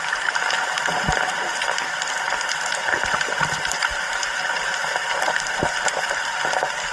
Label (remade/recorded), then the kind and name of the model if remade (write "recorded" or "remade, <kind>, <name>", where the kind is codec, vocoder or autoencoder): remade, vocoder, BigVGAN v2